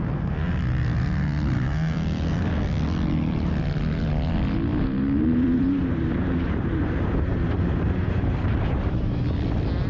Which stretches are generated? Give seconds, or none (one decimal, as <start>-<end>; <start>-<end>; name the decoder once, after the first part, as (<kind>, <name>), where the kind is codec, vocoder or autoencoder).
4.7-9.2 (vocoder, BigVGAN v2)